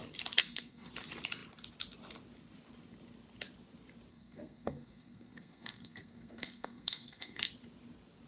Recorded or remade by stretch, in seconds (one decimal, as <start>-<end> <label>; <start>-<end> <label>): 0.0-0.4 recorded; 0.4-0.9 remade; 0.9-4.1 recorded; 4.1-7.5 remade; 7.5-8.3 recorded